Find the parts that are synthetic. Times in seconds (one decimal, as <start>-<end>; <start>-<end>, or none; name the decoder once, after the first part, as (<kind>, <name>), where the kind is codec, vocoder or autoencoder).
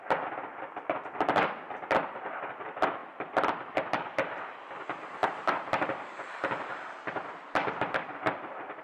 none